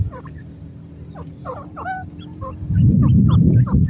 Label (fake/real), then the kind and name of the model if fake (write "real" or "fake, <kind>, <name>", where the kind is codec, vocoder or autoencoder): fake, vocoder, BigVGAN v2